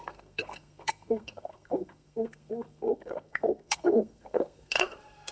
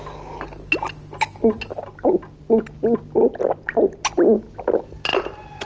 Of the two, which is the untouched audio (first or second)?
second